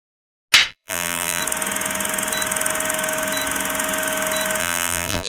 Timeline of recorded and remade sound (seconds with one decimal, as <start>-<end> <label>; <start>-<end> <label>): 0.0-0.7 recorded; 0.7-1.4 remade; 1.4-4.6 recorded; 4.6-5.3 remade